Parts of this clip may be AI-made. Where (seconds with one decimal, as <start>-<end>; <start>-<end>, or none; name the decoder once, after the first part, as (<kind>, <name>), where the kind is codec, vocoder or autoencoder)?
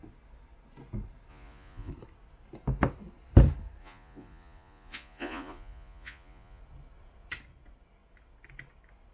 1.3-1.9 (vocoder, Vocos); 3.8-6.6